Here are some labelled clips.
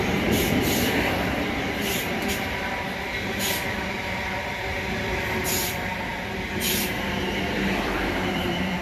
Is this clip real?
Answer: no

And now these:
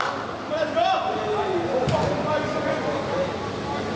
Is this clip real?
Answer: yes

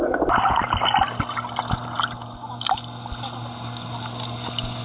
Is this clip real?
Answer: yes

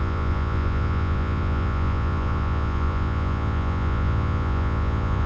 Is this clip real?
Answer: no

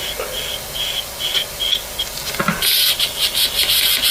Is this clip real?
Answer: yes